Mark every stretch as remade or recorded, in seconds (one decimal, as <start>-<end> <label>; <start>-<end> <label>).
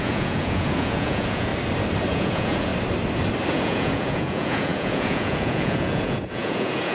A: 0.0-1.5 remade; 1.5-2.1 recorded; 2.1-2.7 remade; 2.7-3.5 recorded; 3.5-6.9 remade